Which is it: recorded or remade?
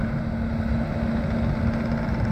recorded